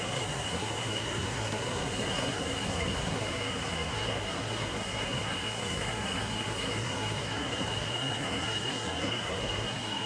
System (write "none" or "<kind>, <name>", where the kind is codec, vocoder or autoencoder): codec, SNAC